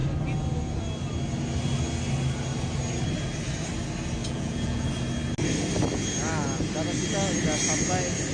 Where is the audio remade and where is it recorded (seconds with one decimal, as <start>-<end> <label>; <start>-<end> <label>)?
0.0-4.2 recorded; 4.2-4.9 remade; 4.9-8.3 recorded

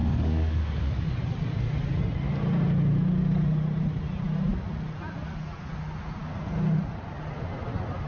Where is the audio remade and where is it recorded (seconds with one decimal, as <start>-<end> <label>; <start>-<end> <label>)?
0.0-1.1 remade; 1.1-8.1 recorded

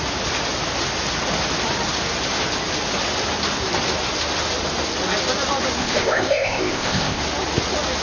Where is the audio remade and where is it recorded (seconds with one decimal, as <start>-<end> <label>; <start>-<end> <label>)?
0.0-5.8 recorded; 5.8-7.2 remade; 7.2-8.0 recorded